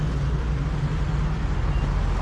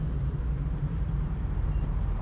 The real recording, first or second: first